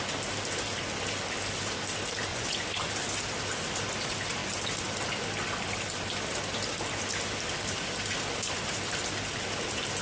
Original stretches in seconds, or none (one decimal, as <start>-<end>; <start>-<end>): 0.0-2.3; 2.9-10.0